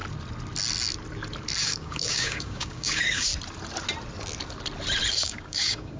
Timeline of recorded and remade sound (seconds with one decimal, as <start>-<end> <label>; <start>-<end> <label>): 0.0-1.6 recorded; 1.6-3.3 remade; 3.3-5.1 recorded; 5.1-6.0 remade